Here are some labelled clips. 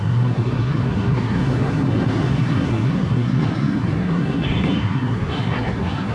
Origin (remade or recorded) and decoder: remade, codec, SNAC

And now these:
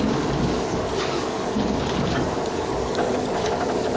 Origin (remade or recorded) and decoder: remade, codec, DAC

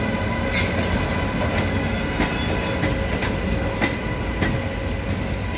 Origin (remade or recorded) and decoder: recorded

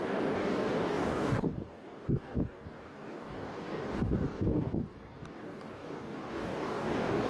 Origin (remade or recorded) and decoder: remade, codec, DAC